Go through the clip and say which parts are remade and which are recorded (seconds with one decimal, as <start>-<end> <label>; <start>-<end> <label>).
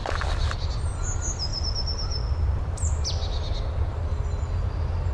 0.0-0.7 remade; 0.7-1.5 recorded; 1.5-4.2 remade; 4.2-5.1 recorded